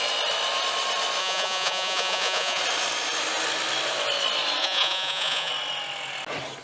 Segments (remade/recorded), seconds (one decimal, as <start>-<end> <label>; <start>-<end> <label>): 0.0-1.2 recorded; 1.2-2.6 remade; 2.6-4.6 recorded; 4.6-5.5 remade; 5.5-6.6 recorded

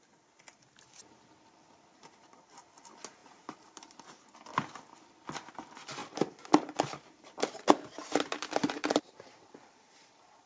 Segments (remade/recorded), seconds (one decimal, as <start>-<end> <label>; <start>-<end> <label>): 0.0-3.2 recorded; 3.2-4.3 remade; 4.3-6.0 recorded; 6.0-10.1 remade; 10.1-10.5 recorded

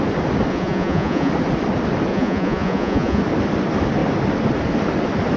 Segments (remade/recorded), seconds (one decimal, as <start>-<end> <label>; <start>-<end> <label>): 0.0-0.5 recorded; 0.5-1.3 remade; 1.3-2.1 recorded; 2.1-3.2 remade; 3.2-5.4 recorded

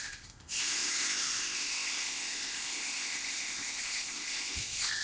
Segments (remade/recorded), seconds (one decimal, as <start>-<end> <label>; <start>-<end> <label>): 0.0-5.0 remade

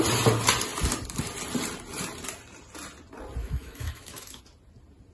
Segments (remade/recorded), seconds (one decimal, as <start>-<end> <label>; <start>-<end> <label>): 0.0-3.4 recorded; 3.4-4.4 remade; 4.4-5.1 recorded